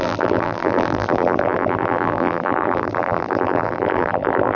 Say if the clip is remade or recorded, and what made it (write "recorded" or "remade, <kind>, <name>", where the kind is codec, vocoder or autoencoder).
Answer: remade, vocoder, BigVGAN v2